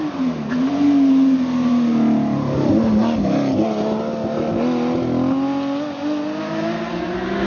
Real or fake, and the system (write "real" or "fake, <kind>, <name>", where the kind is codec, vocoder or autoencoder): real